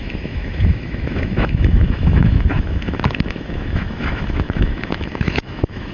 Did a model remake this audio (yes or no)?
yes